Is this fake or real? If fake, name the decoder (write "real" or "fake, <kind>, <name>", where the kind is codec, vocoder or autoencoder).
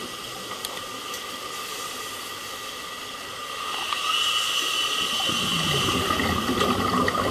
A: real